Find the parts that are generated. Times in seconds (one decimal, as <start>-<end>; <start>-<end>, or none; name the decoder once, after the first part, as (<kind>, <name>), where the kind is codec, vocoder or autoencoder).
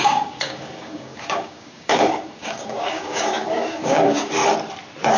0.0-4.4 (codec, DAC)